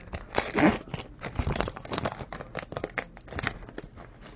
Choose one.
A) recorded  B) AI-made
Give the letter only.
A